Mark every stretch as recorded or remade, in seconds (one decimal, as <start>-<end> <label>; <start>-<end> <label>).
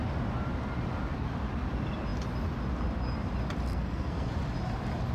0.0-3.7 recorded; 3.7-4.3 remade; 4.3-5.1 recorded